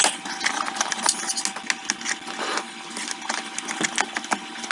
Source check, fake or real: real